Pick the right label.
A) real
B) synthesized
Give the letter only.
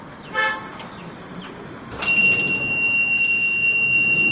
B